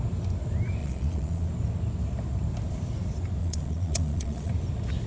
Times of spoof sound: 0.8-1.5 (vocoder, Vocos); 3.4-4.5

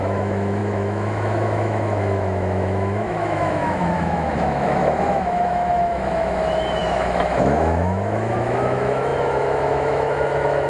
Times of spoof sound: 0.0-10.7 (autoencoder, DAC-VAE)

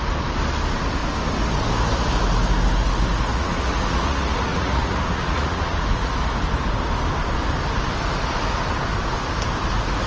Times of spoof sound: 3.3-6.1 (vocoder, Vocos)

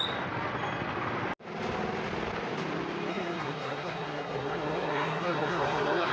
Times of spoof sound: 3.1-6.1 (codec, SNAC)

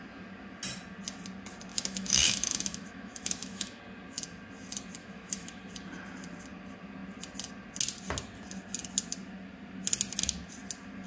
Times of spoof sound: 1.7-3.8 (autoencoder, DAC-VAE); 5.0-5.6